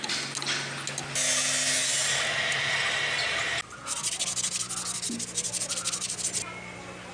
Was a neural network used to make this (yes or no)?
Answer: no